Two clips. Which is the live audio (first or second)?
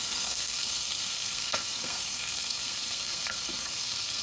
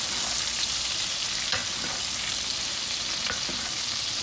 second